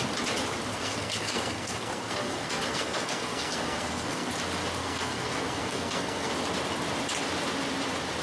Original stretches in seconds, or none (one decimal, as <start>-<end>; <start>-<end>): 0.0-0.7; 4.3-4.8; 6.3-8.2

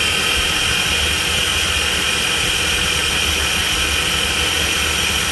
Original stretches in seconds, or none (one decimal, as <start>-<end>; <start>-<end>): 0.0-5.3

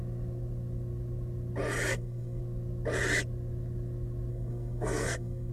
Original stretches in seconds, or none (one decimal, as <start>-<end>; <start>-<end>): 0.0-1.9; 2.4-4.3